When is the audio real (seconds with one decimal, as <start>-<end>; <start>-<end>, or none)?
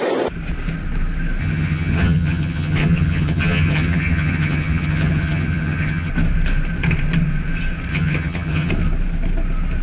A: 0.0-1.4; 6.1-7.9; 8.7-9.8